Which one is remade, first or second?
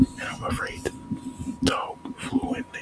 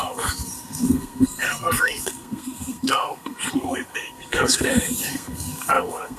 second